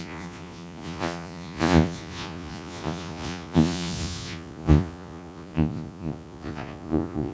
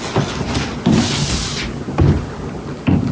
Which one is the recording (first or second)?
second